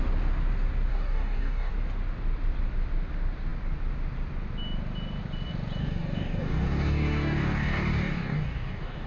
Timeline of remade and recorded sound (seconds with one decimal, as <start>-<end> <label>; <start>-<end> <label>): 0.0-0.9 recorded; 0.9-1.7 remade; 1.7-5.8 recorded; 5.8-9.1 remade